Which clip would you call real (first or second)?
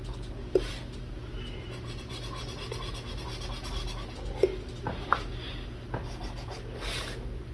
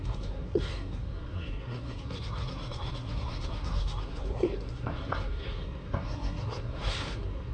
first